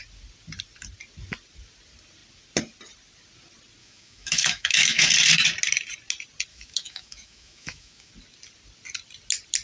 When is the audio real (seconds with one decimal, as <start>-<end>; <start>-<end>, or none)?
0.0-3.8; 5.1-6.5; 8.1-9.6